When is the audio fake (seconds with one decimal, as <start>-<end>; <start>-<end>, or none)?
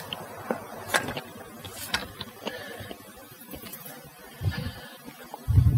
none